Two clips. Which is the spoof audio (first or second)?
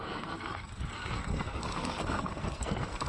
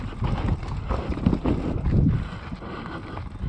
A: first